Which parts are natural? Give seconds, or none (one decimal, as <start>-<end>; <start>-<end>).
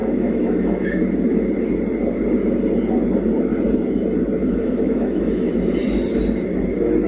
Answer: 1.0-4.4; 5.5-7.1